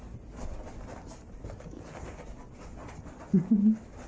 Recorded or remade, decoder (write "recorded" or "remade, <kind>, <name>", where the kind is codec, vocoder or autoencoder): recorded